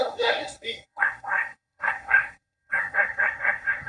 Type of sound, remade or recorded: remade